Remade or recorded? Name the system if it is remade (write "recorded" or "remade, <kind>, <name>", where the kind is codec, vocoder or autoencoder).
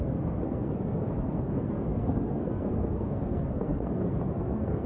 remade, codec, SNAC